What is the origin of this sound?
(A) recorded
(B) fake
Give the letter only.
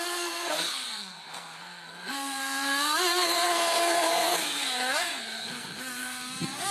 B